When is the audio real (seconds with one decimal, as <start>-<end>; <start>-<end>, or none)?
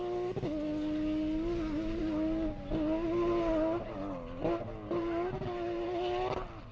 0.0-6.7